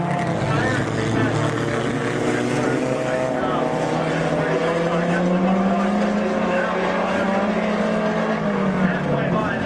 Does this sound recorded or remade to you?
recorded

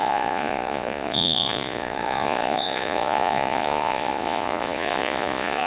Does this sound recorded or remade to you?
remade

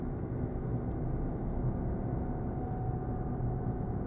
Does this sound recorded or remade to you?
recorded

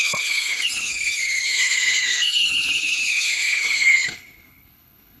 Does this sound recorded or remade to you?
remade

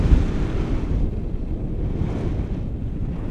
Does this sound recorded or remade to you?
recorded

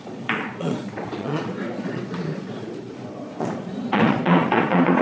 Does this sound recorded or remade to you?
remade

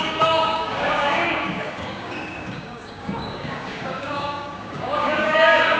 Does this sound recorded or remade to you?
remade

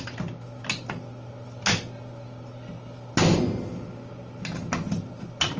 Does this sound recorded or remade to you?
recorded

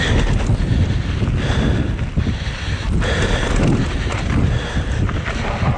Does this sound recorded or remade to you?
recorded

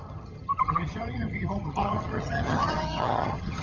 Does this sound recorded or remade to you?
remade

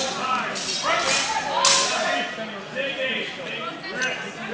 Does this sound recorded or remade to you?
recorded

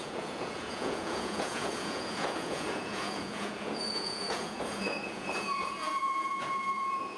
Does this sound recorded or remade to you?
remade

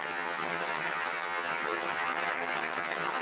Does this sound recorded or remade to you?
remade